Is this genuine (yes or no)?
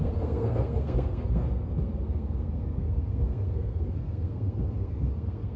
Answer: no